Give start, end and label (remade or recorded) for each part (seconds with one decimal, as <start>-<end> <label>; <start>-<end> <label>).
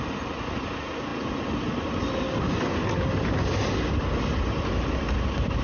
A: 0.0-5.6 recorded